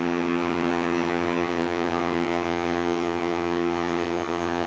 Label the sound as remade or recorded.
remade